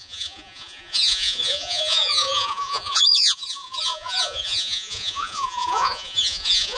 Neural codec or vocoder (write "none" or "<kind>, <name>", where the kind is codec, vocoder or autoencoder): vocoder, Vocos